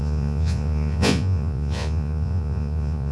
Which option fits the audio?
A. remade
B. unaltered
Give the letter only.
A